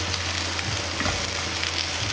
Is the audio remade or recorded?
recorded